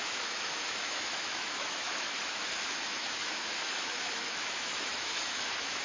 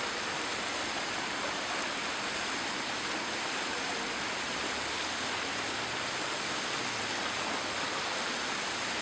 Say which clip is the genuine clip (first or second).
second